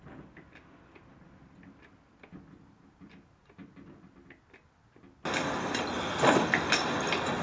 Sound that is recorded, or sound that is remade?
recorded